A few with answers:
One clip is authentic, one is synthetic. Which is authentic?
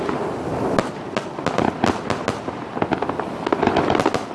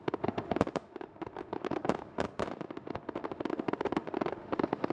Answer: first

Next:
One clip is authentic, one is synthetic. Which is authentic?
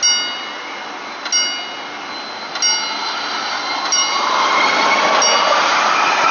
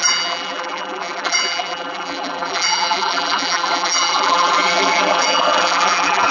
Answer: first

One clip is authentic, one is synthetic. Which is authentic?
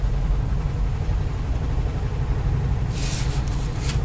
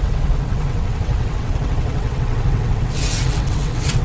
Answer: first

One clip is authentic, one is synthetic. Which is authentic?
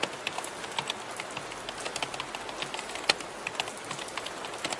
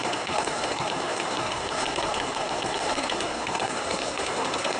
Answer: first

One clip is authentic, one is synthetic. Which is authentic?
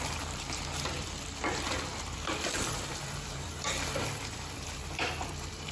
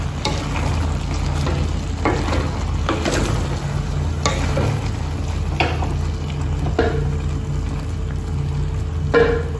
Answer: second